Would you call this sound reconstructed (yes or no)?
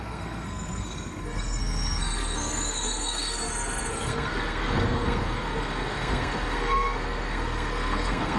yes